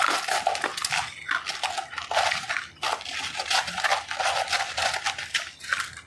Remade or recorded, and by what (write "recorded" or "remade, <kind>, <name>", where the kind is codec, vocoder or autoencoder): recorded